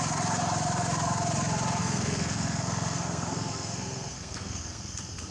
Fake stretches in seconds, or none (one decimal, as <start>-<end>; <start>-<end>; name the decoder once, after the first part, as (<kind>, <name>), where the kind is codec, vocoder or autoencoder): 1.8-5.3 (codec, SNAC)